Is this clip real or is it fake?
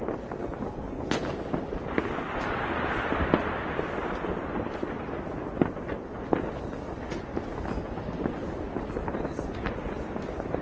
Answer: real